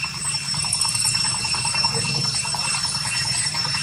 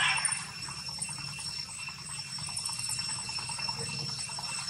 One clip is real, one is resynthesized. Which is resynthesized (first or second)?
first